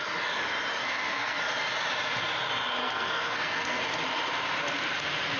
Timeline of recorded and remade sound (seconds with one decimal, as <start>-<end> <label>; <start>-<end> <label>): 0.0-0.8 recorded; 0.8-1.4 remade; 1.4-2.8 recorded; 2.8-3.8 remade; 3.8-5.4 recorded